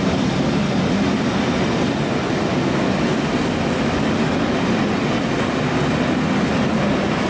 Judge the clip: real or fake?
real